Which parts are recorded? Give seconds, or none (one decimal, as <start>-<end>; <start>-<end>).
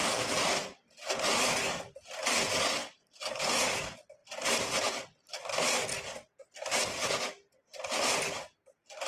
0.0-2.8; 3.5-9.1